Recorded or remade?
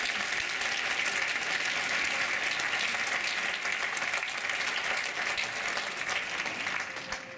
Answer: recorded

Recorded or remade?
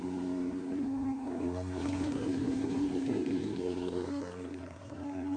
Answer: remade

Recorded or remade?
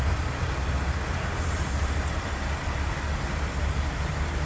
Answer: recorded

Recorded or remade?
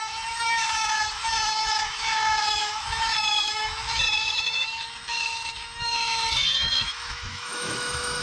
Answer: remade